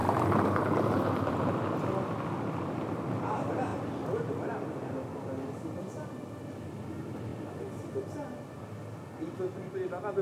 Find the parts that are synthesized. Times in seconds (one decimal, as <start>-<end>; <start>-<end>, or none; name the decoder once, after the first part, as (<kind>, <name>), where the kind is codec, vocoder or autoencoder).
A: 0.0-1.3 (vocoder, BigVGAN v2)